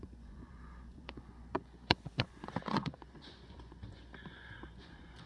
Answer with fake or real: fake